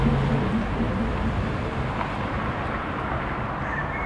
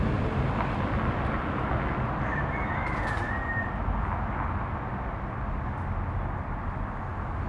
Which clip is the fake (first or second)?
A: first